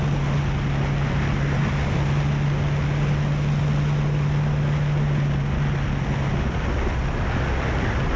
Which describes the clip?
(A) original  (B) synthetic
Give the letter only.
A